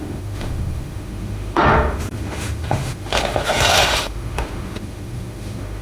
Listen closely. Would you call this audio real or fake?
fake